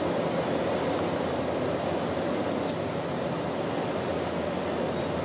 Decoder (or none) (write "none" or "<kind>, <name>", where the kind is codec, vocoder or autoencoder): none